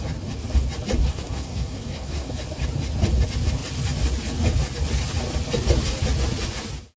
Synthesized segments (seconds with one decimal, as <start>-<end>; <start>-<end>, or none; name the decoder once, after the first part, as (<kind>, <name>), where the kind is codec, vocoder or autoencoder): 1.0-2.3 (codec, SNAC)